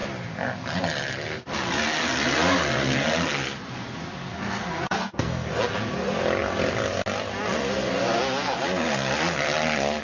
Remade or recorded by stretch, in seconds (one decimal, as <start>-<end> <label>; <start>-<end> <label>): 0.0-4.3 recorded; 4.3-5.5 remade; 5.5-10.0 recorded